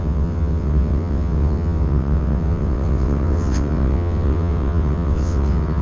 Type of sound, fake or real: fake